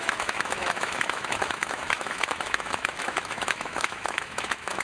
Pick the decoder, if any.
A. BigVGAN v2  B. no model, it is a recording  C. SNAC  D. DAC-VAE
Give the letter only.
D